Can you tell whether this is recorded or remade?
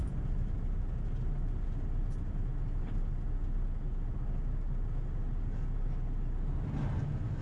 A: recorded